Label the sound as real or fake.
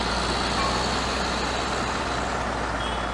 real